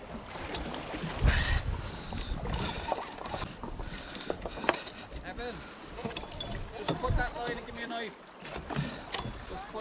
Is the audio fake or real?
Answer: real